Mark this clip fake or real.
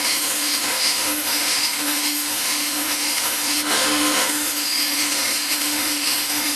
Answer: fake